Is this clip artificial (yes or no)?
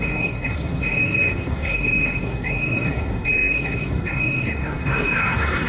yes